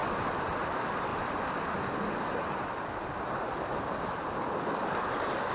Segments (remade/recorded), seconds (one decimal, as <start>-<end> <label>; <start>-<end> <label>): 0.0-5.5 recorded